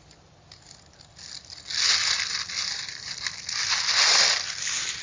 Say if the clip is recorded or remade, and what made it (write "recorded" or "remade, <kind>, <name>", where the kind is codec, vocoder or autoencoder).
recorded